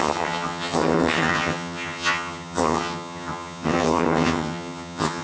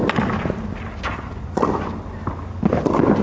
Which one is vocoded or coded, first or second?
first